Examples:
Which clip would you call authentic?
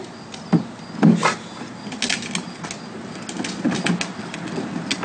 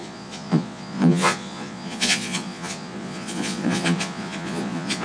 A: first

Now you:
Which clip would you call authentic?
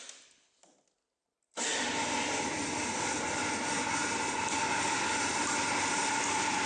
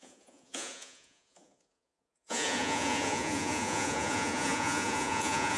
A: first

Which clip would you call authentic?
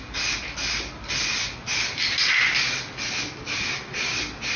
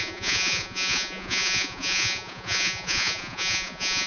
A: first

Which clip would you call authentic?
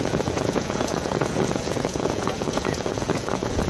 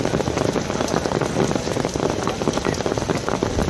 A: second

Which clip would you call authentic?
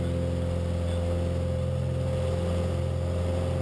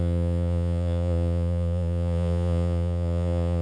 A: first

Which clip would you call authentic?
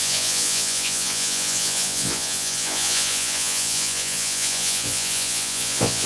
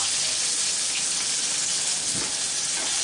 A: second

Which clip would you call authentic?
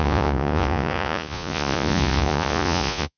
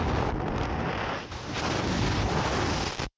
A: second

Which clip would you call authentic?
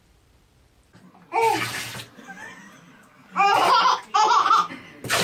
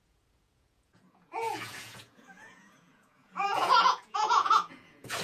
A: first